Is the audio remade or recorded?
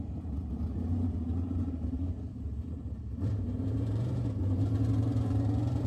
remade